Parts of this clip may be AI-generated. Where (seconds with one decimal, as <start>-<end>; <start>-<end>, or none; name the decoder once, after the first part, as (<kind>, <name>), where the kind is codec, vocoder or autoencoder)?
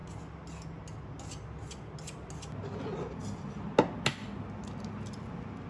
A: none